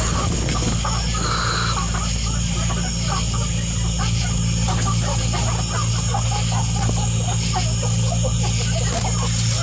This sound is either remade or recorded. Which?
recorded